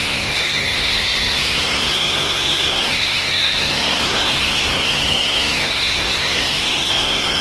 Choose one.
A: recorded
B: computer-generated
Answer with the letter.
B